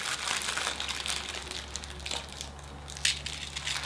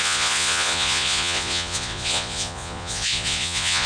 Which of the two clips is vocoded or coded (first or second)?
second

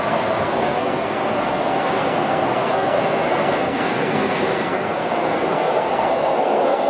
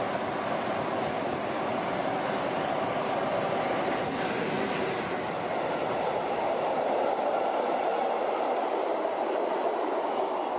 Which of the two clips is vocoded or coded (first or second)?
first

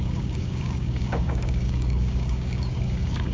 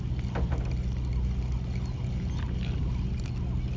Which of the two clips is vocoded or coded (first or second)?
first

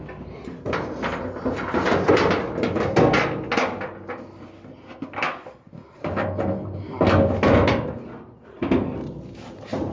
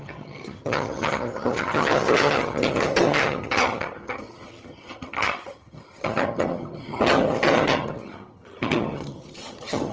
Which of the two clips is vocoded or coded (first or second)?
second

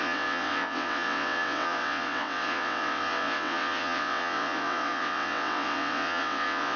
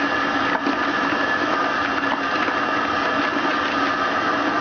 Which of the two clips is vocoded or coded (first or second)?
first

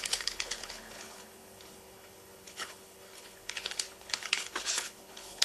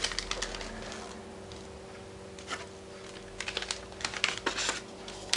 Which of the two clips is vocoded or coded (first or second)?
first